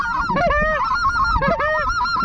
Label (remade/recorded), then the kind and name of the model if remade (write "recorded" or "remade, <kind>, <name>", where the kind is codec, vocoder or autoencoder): recorded